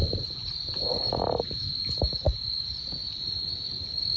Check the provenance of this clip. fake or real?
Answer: fake